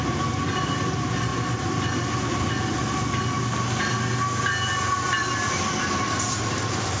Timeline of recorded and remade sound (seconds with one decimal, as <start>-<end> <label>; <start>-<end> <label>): 0.0-7.0 recorded